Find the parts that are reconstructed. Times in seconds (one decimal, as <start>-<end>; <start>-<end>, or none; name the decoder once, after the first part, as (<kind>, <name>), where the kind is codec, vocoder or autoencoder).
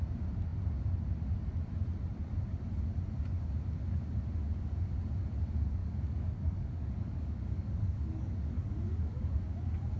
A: 5.8-9.3 (codec, DAC)